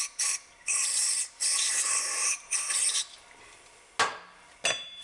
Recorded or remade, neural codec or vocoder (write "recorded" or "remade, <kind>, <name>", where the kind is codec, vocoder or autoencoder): recorded